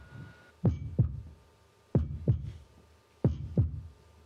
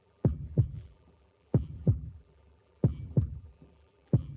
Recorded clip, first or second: first